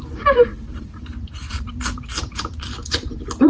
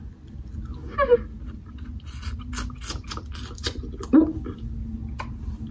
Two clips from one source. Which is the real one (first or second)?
second